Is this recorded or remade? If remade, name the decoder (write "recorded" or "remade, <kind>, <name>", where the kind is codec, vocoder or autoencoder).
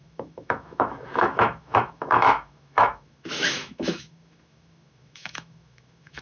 remade, autoencoder, DAC-VAE